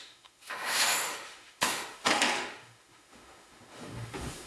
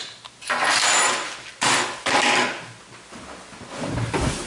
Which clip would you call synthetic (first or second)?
first